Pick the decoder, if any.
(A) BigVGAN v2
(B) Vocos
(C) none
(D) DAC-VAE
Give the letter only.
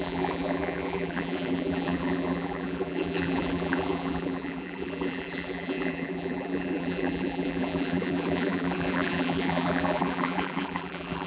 A